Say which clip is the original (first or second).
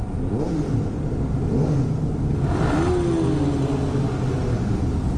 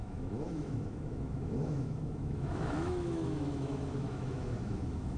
first